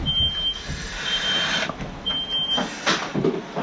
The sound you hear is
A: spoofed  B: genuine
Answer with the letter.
B